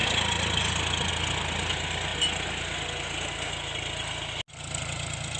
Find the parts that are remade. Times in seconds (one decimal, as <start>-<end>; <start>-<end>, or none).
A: none